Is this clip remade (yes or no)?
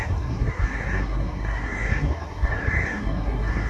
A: yes